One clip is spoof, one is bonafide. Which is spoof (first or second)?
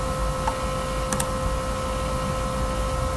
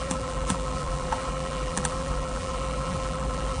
second